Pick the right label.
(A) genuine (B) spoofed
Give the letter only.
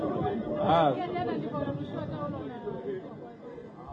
A